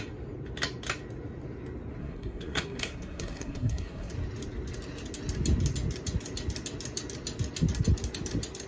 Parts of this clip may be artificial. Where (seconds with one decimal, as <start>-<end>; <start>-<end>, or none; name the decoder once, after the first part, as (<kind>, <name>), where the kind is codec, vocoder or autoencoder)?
2.0-4.1 (codec, SNAC)